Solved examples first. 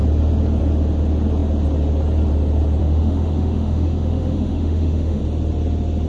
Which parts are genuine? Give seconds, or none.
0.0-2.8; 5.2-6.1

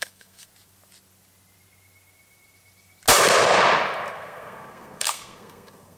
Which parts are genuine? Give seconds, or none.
0.5-4.1

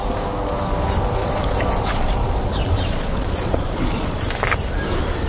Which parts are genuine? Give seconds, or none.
0.0-1.2; 4.3-5.3